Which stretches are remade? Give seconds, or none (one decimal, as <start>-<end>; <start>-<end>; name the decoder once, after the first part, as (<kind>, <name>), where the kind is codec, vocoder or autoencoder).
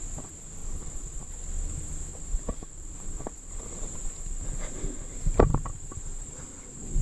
0.6-1.3 (vocoder, BigVGAN v2); 2.1-3.5